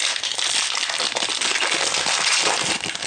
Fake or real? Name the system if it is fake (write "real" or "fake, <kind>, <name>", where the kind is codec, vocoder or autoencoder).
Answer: real